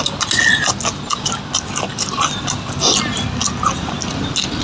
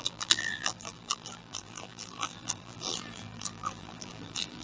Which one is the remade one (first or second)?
second